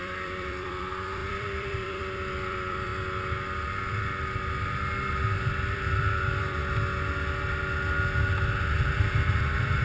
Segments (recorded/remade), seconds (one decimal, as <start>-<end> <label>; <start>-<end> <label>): 0.0-2.9 remade; 2.9-5.5 recorded; 5.5-6.6 remade; 6.6-8.7 recorded; 8.7-9.8 remade